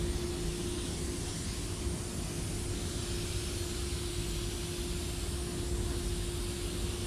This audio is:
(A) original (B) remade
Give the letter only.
A